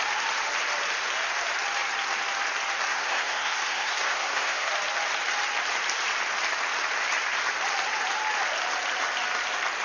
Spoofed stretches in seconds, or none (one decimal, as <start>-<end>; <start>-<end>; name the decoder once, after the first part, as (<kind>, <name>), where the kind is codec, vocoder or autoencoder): 2.9-4.7 (codec, SNAC)